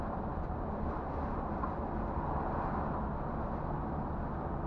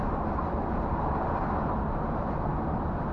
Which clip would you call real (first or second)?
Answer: first